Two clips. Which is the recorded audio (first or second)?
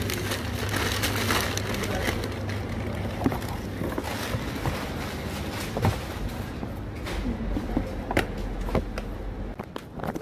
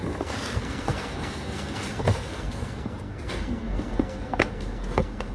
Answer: first